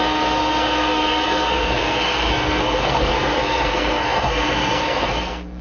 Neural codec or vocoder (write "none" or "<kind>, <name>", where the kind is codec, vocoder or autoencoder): codec, SNAC